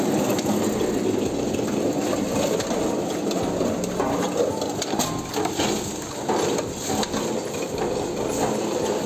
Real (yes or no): yes